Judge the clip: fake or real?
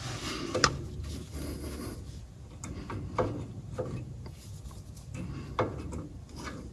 real